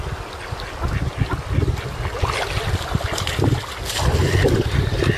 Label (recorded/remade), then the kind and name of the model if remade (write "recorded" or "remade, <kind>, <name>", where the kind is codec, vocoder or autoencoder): recorded